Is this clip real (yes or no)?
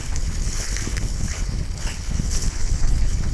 no